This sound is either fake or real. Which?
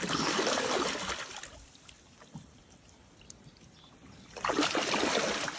real